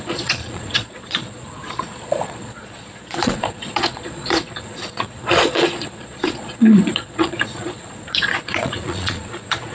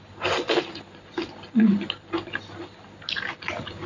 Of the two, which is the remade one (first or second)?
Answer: first